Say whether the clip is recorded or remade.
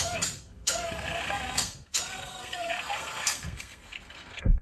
remade